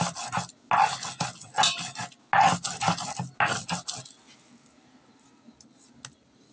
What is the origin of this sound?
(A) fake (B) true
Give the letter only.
B